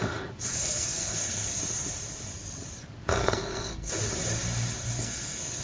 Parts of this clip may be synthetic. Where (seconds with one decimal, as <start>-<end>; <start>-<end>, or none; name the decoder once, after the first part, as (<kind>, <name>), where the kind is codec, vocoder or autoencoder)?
0.5-1.6 (codec, SNAC); 3.2-3.9; 4.8-5.6